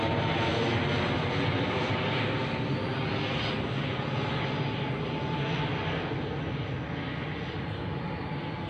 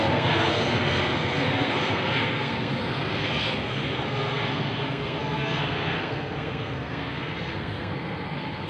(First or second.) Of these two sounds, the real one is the first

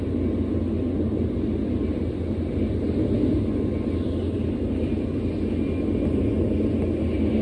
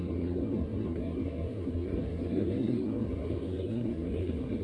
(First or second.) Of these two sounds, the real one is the first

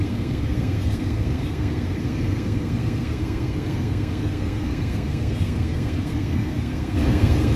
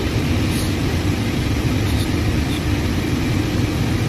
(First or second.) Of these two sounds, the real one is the second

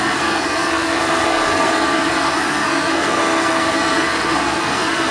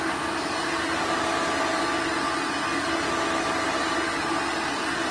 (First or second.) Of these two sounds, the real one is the second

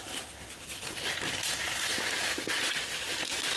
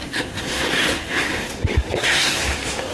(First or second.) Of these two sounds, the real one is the first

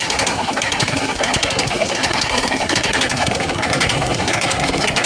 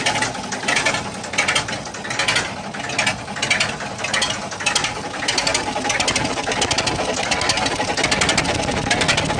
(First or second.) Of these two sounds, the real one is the second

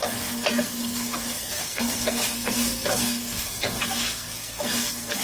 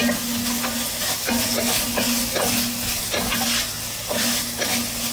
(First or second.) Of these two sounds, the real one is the second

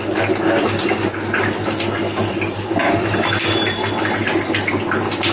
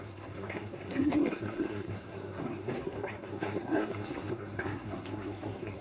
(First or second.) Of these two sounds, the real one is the first